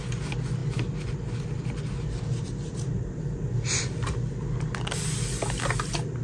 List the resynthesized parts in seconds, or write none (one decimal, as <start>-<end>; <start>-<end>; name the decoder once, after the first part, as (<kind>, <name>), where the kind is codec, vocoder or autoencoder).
none